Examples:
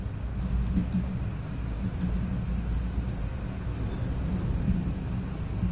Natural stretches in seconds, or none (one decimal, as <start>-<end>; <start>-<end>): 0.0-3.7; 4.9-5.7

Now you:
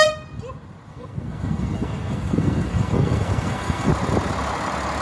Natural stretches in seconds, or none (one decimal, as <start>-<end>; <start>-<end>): 0.0-0.9; 3.9-5.0

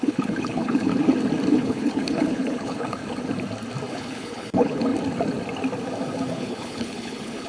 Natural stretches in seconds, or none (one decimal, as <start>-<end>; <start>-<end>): 0.9-1.5; 3.0-3.9; 4.9-6.3